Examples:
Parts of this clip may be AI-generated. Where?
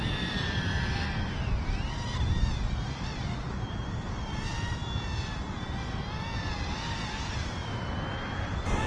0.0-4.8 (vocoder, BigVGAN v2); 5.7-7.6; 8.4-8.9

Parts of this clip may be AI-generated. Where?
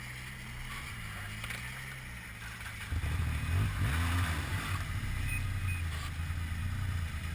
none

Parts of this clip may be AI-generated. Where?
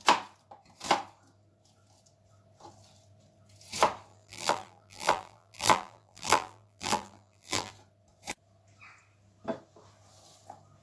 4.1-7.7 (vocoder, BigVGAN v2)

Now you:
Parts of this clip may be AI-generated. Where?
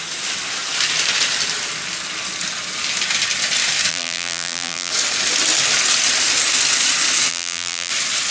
3.9-4.9 (vocoder, BigVGAN v2); 7.3-7.9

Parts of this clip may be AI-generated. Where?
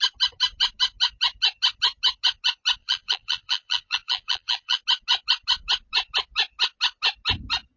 2.8-4.8 (vocoder, BigVGAN v2)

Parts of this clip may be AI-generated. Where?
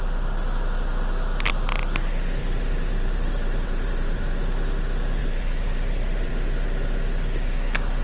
2.4-4.4 (vocoder, BigVGAN v2); 5.2-6.3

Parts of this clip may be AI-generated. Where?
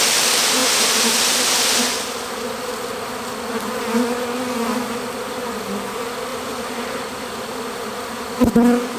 6.3-7.6 (vocoder, BigVGAN v2)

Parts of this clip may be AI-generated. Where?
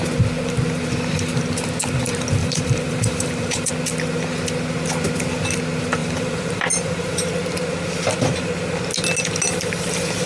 2.4-3.7 (vocoder, BigVGAN v2); 6.0-7.3